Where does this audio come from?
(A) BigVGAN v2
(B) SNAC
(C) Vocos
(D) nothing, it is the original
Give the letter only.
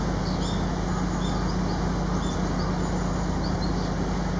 D